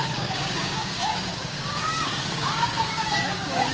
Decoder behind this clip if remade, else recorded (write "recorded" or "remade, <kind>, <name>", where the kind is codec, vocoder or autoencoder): remade, codec, DAC